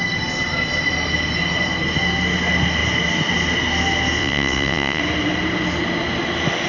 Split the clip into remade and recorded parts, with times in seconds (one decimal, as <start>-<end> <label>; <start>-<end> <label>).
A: 0.0-4.2 recorded; 4.2-5.0 remade; 5.0-6.7 recorded